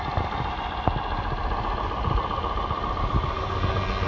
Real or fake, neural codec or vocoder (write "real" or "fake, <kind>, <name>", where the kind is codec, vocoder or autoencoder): real